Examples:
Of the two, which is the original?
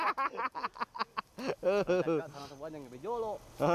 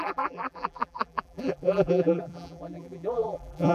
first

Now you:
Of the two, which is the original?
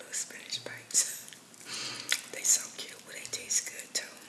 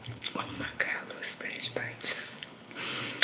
first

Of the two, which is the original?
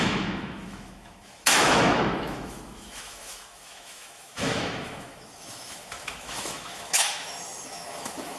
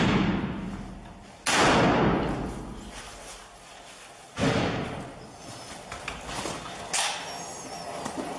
second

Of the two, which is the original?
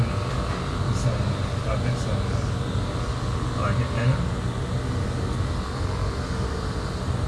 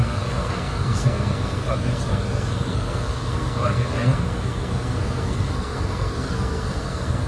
first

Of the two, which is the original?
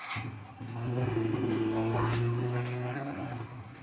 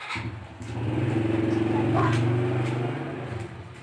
second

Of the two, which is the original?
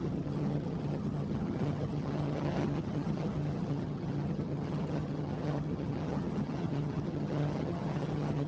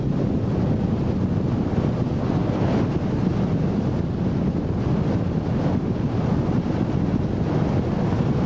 second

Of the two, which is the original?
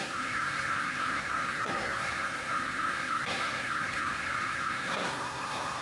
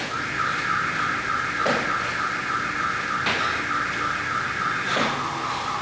second